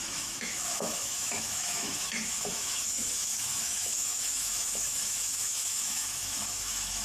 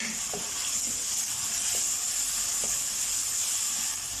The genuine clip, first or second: second